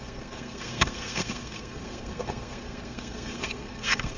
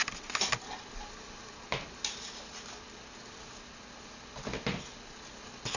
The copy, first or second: first